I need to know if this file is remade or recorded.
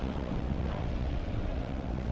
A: remade